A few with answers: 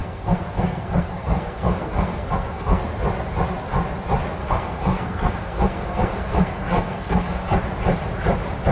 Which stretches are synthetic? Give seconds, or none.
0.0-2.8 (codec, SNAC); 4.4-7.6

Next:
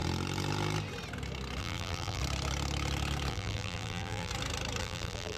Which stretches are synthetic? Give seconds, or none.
1.6-2.2 (vocoder, BigVGAN v2); 3.3-4.3; 4.8-5.4

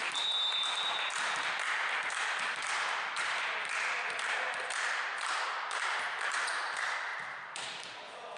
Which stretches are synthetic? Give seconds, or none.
2.6-6.5 (vocoder, BigVGAN v2); 7.1-7.9

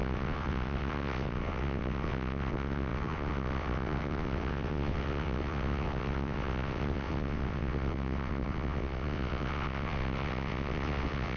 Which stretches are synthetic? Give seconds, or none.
0.0-11.4 (vocoder, WaveNeXt)

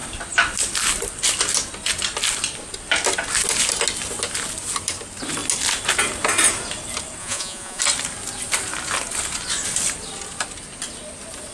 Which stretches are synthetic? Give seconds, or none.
7.2-7.8 (vocoder, Vocos)

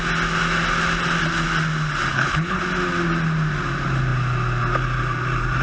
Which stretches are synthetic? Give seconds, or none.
2.1-2.6 (codec, HILCodec)

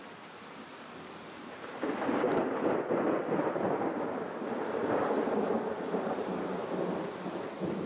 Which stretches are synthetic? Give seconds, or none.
none